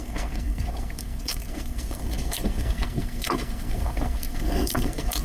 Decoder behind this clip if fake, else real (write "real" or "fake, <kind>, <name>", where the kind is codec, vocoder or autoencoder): fake, codec, SNAC